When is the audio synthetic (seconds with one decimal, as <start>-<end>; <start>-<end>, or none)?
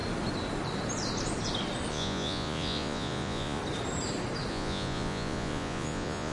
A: 1.9-3.6; 4.5-6.3